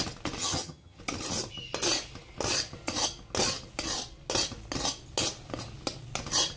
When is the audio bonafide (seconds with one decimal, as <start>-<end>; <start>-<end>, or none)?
0.0-0.4; 1.0-6.6